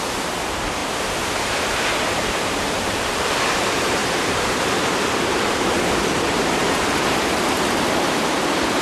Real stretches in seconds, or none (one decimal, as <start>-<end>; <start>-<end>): none